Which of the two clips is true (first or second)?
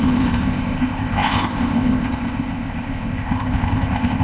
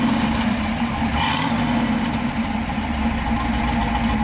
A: second